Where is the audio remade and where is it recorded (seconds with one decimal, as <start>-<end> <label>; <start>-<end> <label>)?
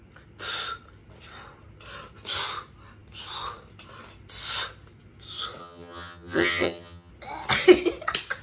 0.0-5.6 recorded; 5.6-7.1 remade; 7.1-8.4 recorded